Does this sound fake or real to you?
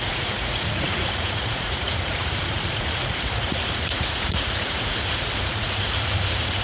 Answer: fake